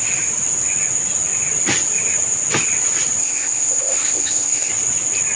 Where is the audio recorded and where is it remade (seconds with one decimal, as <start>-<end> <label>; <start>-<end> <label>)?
0.0-3.2 recorded; 3.2-4.7 remade; 4.7-5.4 recorded